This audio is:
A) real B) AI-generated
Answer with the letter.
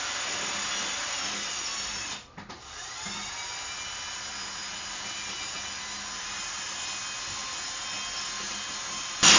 A